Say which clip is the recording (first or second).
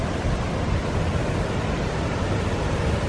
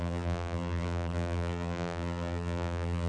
first